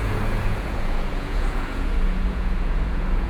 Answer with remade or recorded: remade